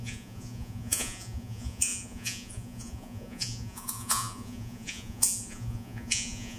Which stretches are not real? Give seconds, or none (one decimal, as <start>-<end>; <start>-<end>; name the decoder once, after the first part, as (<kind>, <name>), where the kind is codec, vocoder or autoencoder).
0.0-6.6 (vocoder, Vocos)

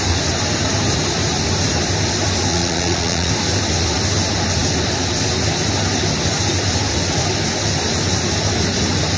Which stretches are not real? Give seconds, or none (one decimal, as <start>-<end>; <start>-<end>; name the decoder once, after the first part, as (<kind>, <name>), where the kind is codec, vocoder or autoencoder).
2.5-3.3 (vocoder, Vocos)

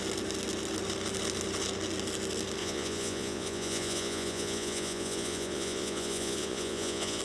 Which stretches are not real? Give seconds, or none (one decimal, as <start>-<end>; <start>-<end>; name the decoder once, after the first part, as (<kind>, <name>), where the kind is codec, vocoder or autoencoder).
2.6-7.2 (vocoder, Vocos)

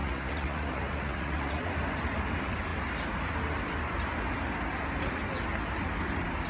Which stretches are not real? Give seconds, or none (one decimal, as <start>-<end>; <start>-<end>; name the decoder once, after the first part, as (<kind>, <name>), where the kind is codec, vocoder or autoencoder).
0.0-1.7 (vocoder, Vocos)

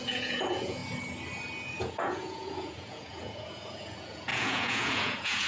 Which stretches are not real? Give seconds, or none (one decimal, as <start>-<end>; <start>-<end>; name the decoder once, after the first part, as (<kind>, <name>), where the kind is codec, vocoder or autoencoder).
0.0-0.8 (vocoder, Vocos); 1.8-5.5

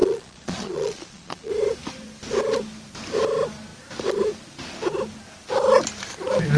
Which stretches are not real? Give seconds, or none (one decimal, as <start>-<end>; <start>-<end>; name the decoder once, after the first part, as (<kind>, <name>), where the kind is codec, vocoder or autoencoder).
0.0-1.5 (vocoder, Vocos)

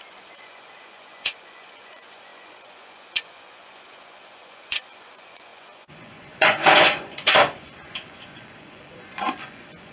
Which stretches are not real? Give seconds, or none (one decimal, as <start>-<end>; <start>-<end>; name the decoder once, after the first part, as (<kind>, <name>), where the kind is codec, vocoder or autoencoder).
0.0-9.9 (vocoder, Vocos)

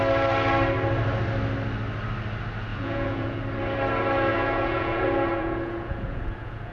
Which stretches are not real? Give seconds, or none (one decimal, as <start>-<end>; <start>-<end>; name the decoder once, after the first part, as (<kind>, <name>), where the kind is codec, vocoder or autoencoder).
2.7-3.4 (vocoder, Vocos); 4.3-6.7